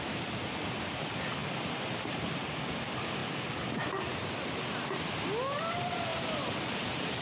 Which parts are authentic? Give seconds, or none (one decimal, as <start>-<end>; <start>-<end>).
0.0-7.2

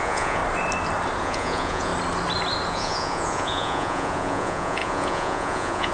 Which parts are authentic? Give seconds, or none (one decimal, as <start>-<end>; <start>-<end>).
0.4-1.2; 1.9-2.7

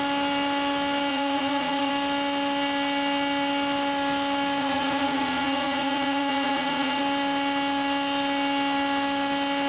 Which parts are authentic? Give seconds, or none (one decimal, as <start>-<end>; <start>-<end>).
0.0-1.1; 1.9-4.6; 7.0-9.7

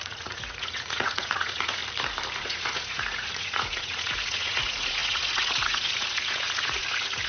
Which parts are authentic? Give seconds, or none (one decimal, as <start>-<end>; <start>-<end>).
1.8-2.4

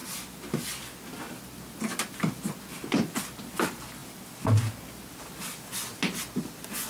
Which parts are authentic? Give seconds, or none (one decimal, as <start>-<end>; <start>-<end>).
0.0-6.9

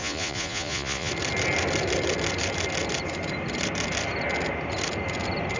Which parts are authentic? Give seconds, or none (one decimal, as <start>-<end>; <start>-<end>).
1.1-5.6